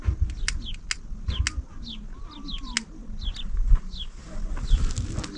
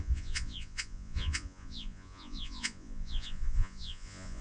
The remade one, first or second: second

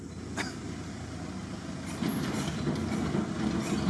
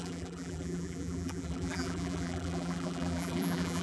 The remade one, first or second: second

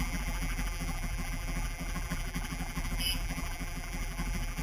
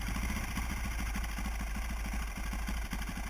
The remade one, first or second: first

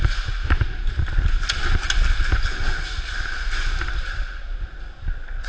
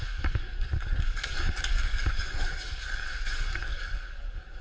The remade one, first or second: second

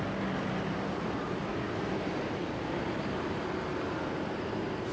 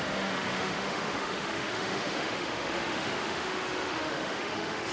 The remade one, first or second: second